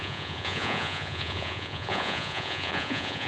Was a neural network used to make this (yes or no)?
yes